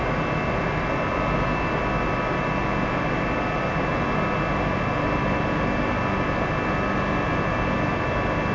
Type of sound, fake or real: real